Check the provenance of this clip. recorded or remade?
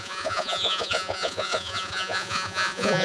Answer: remade